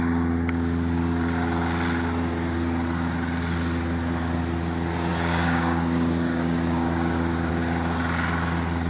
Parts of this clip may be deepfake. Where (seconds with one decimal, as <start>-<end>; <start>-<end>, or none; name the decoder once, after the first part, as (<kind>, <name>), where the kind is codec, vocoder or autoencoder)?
5.1-7.5 (codec, DAC)